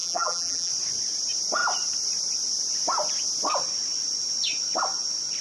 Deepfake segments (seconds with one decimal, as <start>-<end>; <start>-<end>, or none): 0.0-0.7